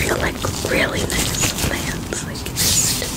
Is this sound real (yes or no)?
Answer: no